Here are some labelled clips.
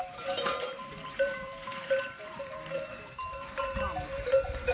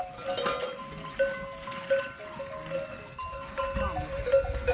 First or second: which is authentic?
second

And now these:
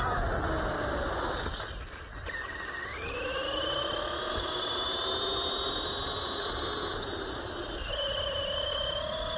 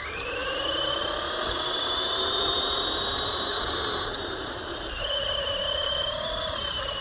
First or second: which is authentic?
first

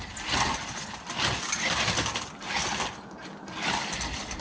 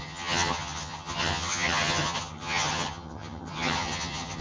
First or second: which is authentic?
first